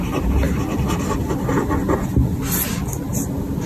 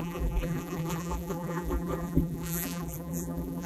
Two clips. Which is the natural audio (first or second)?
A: first